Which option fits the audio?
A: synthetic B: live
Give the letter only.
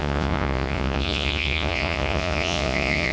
A